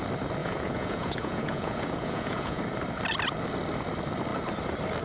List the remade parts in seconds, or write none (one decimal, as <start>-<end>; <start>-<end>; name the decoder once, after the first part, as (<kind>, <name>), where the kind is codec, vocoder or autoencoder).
0.4-2.6 (vocoder, Vocos)